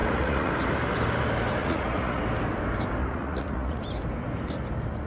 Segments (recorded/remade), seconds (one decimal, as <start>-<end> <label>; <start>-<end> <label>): 0.0-0.5 remade; 0.5-1.6 recorded; 1.6-2.2 remade; 2.2-3.0 recorded; 3.0-3.8 remade; 3.8-5.1 recorded